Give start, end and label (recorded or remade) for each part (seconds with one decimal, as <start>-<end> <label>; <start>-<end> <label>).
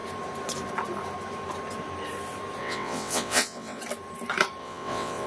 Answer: 0.0-2.6 recorded; 2.6-3.8 remade; 3.8-4.6 recorded; 4.6-5.3 remade